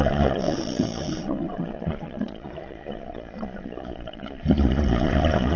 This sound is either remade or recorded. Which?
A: remade